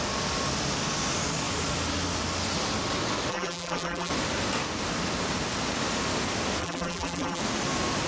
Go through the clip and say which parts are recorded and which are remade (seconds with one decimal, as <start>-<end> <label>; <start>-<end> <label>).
0.0-3.3 recorded; 3.3-4.1 remade; 4.1-6.6 recorded; 6.6-7.4 remade; 7.4-8.1 recorded